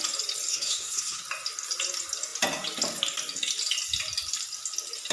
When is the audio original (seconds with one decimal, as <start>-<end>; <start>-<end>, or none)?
0.0-0.5; 1.2-5.1